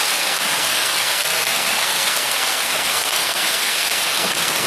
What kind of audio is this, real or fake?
fake